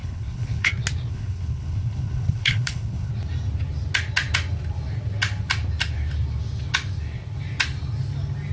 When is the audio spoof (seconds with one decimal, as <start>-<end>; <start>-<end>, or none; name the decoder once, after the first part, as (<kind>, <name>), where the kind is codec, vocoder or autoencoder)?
0.0-0.7 (codec, HILCodec); 1.1-3.1